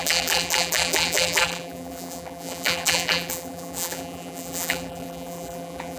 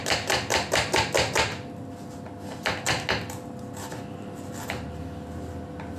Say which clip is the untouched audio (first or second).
second